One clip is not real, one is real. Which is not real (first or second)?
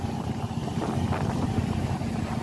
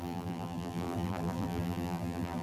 second